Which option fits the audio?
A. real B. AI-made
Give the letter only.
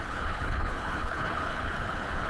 B